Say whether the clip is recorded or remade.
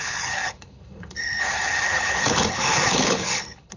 remade